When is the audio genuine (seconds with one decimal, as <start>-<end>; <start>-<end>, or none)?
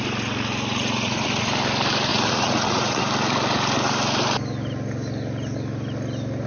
0.0-0.7; 1.5-2.1; 3.0-6.5